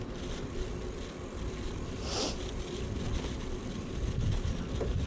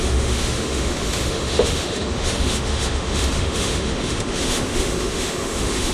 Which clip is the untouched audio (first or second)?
first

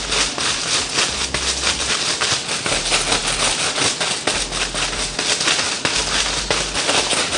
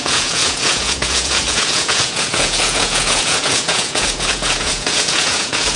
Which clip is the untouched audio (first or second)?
first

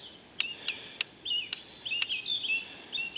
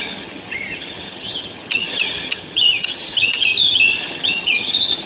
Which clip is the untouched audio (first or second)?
first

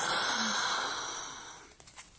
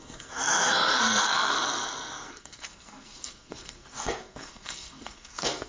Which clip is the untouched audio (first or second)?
first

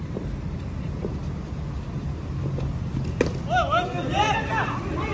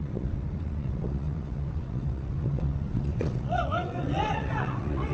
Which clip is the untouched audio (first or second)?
first